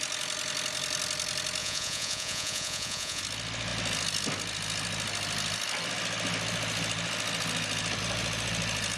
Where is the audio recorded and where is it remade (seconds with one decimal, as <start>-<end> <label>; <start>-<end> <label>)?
0.0-1.6 recorded; 1.6-3.2 remade; 3.2-9.0 recorded